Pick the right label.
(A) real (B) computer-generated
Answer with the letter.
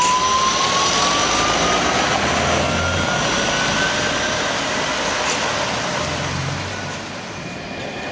A